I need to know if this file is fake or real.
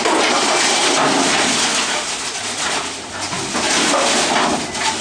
real